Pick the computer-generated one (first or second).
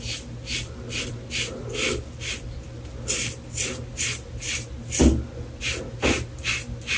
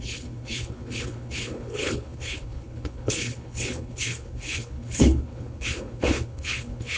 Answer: second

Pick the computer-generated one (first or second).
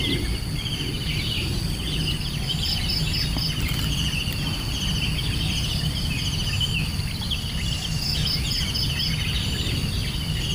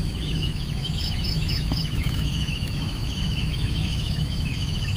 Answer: second